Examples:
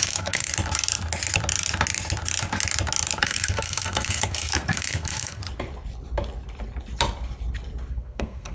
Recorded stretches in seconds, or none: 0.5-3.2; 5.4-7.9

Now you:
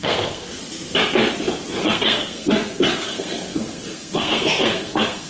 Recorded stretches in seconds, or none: 0.6-1.8

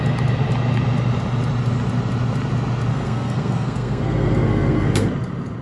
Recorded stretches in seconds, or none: 0.0-2.9; 5.1-5.6

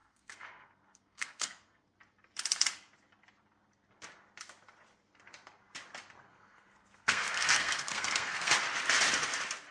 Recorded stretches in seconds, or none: 1.8-6.3; 8.5-9.7